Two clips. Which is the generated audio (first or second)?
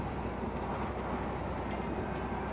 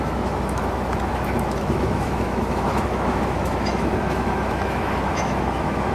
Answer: second